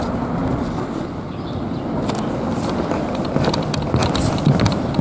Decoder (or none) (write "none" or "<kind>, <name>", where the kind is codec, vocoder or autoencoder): none